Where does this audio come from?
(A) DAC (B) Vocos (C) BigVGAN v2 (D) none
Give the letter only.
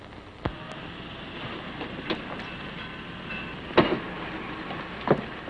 D